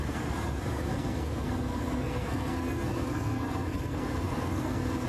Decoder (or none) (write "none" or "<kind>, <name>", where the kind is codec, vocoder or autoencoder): codec, SNAC